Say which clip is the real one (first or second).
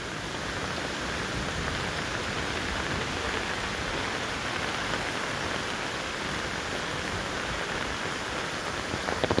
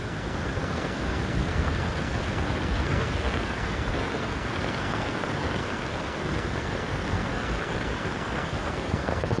first